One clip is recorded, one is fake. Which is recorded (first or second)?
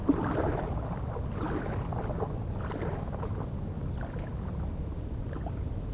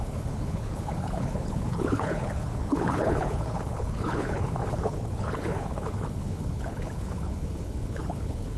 first